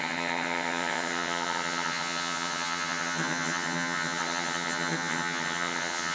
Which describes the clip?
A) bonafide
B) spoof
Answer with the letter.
B